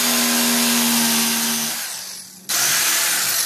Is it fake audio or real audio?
real